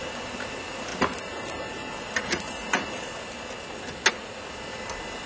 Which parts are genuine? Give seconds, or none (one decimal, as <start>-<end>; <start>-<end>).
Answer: 0.0-5.3